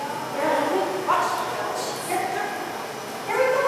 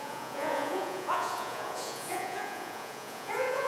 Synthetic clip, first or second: second